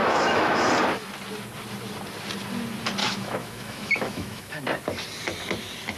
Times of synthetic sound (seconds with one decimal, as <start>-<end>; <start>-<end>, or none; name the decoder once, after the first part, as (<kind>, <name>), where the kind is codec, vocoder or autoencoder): 0.0-0.7 (autoencoder, DAC-VAE); 3.0-4.6